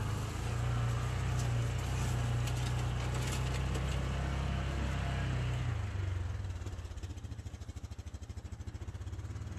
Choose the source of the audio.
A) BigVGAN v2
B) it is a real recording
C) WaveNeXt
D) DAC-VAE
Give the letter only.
B